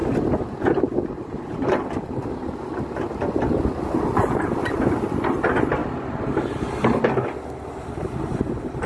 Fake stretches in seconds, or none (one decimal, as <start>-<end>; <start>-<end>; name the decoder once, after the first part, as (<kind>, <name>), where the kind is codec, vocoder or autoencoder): none